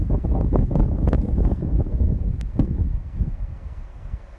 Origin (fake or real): fake